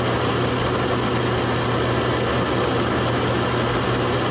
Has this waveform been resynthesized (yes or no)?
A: no